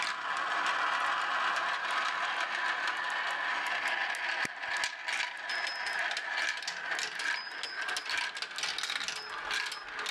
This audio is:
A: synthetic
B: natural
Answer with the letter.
B